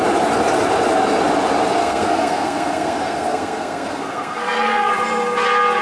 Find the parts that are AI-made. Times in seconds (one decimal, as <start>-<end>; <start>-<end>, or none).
1.8-4.9